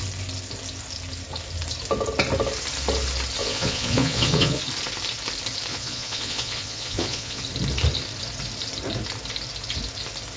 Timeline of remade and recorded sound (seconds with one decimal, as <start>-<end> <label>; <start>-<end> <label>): 0.0-3.4 recorded; 3.4-4.6 remade; 4.6-5.7 recorded; 5.7-7.4 remade; 7.4-10.4 recorded